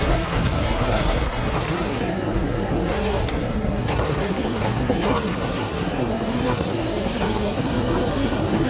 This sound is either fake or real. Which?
fake